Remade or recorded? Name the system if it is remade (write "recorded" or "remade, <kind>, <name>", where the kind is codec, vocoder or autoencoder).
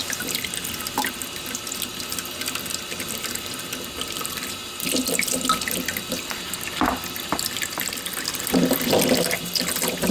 recorded